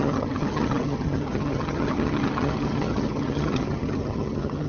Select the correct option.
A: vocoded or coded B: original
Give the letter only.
A